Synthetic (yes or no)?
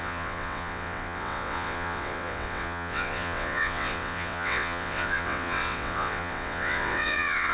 yes